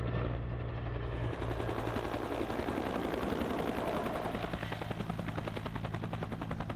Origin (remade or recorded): recorded